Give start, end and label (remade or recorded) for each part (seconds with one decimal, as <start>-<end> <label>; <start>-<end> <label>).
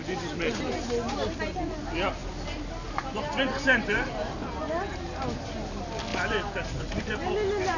0.0-7.8 recorded